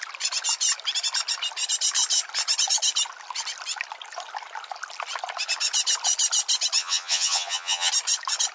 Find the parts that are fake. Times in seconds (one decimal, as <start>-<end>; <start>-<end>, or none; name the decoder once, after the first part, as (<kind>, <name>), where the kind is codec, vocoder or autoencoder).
6.8-7.9 (vocoder, HiFi-GAN)